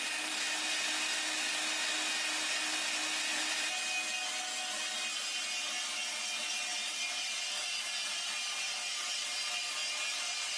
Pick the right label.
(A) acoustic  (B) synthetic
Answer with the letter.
A